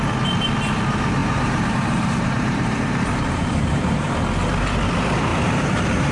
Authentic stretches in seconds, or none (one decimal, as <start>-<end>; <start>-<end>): 0.0-1.2; 4.1-5.3